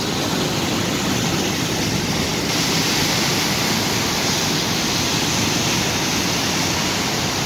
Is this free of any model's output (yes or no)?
yes